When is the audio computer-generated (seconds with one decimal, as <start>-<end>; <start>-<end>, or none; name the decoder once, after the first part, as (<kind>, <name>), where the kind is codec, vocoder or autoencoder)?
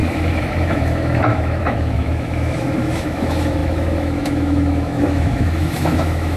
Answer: 0.0-6.4 (autoencoder, DAC-VAE)